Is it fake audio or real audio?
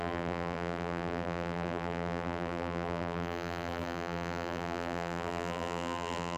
fake